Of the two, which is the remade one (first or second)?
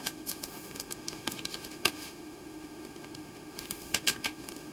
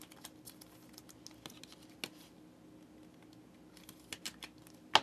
first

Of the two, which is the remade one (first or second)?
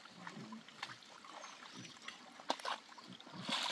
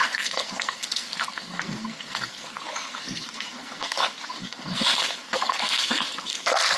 second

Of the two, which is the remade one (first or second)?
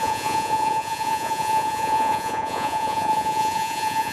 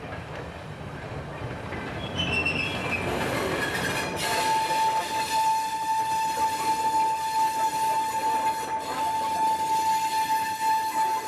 first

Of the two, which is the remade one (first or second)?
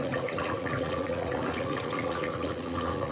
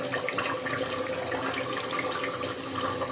first